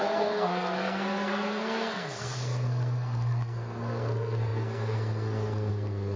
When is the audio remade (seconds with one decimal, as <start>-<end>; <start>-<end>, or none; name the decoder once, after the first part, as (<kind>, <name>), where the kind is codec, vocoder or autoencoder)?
0.0-6.2 (codec, SNAC)

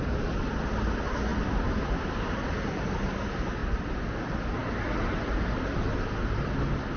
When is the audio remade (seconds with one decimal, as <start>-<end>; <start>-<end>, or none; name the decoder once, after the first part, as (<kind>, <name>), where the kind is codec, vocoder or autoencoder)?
none

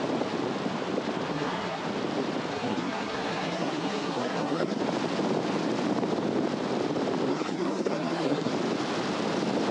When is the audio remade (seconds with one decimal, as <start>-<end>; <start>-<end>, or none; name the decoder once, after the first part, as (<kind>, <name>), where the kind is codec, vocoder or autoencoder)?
1.3-1.8 (codec, SNAC); 2.5-4.8; 7.3-8.5

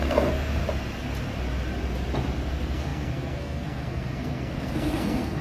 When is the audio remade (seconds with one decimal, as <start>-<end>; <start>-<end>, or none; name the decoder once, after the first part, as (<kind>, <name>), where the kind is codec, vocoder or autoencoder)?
0.0-0.6 (codec, SNAC); 2.5-5.4

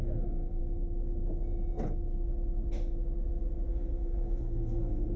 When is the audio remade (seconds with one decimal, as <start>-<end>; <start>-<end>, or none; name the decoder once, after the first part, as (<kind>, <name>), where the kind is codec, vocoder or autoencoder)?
0.0-0.6 (codec, SNAC); 3.7-5.2

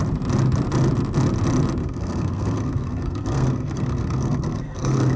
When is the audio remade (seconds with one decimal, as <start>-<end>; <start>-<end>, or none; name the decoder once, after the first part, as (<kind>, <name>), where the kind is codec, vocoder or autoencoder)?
1.8-5.2 (codec, SNAC)

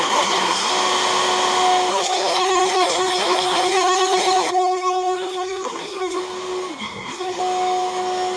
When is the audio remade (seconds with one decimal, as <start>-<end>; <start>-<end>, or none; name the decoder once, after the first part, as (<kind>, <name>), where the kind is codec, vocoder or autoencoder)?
0.0-0.7 (codec, SNAC); 1.9-6.2; 6.8-7.4

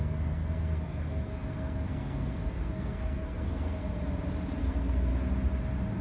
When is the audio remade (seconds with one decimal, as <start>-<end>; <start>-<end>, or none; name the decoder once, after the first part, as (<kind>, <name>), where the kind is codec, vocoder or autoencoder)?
0.0-4.0 (codec, SNAC); 4.6-5.1